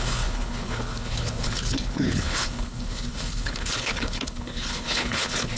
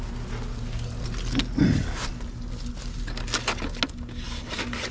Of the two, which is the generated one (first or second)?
first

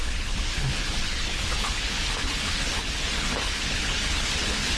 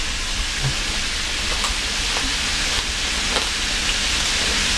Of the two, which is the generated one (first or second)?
first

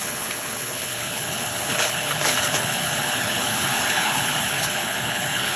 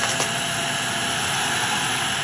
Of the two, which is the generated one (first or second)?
first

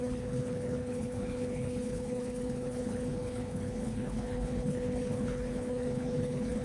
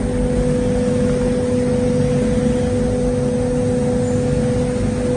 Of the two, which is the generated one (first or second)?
first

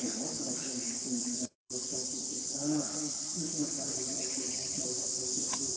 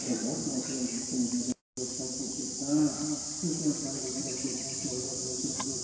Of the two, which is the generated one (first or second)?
first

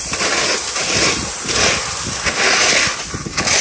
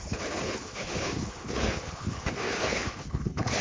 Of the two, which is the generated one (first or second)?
second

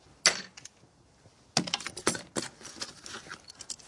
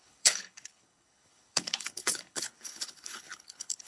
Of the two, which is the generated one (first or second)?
second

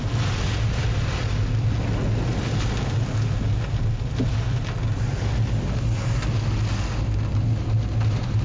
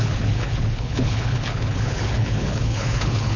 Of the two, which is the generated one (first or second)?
second